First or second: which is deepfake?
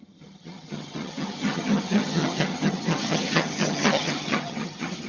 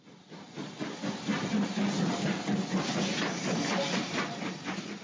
first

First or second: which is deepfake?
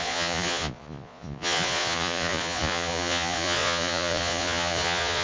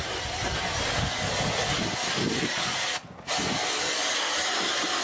first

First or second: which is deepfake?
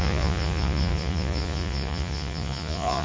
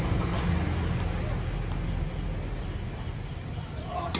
first